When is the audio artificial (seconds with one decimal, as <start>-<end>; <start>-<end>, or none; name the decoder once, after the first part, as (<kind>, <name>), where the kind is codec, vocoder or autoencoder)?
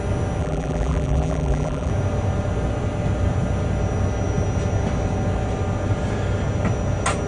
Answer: 0.4-1.9 (vocoder, BigVGAN v2)